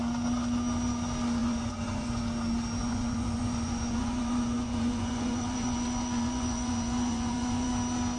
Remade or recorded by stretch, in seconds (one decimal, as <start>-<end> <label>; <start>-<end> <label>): 0.0-1.4 recorded; 1.4-2.2 remade; 2.2-2.8 recorded; 2.8-7.7 remade; 7.7-8.2 recorded